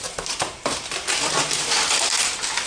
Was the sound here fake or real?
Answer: real